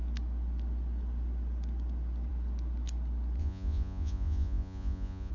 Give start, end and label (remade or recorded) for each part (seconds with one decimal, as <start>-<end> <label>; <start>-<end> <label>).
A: 0.0-3.4 recorded; 3.4-5.3 remade